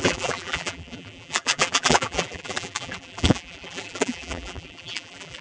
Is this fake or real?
fake